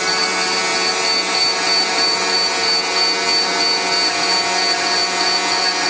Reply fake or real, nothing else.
real